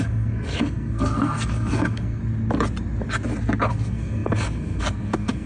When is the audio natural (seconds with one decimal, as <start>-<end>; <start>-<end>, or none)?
2.2-3.7